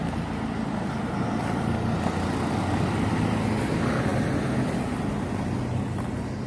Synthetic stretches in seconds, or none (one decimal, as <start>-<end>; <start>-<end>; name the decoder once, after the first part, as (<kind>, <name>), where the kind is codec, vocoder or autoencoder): none